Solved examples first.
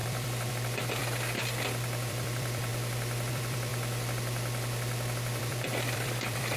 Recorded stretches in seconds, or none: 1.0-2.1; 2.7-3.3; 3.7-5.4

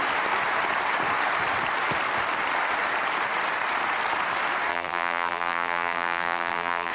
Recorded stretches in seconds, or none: 0.0-4.7

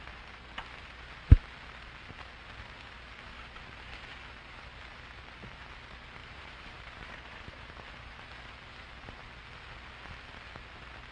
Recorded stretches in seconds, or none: 0.0-6.2; 7.7-11.1

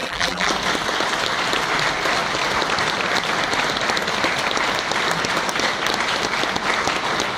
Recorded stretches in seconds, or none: 0.5-7.4

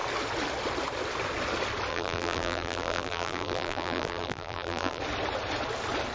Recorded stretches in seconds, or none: 0.0-1.9; 5.0-6.1

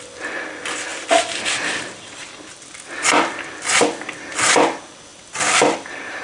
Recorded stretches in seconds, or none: 0.0-6.2

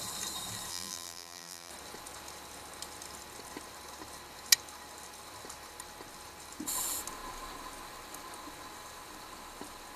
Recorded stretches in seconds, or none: 0.0-0.7; 1.7-10.0

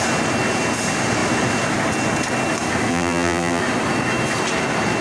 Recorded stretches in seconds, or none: 0.0-2.9; 3.6-5.0